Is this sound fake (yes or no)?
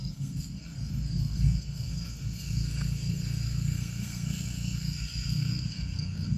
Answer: yes